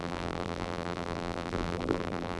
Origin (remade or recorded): remade